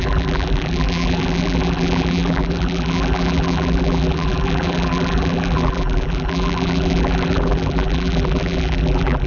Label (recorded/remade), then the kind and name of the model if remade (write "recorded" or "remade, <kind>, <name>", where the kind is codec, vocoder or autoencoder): remade, vocoder, BigVGAN v2